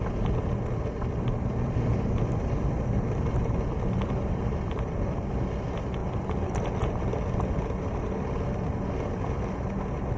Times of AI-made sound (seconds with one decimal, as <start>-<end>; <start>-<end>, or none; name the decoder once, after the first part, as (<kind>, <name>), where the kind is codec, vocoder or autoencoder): none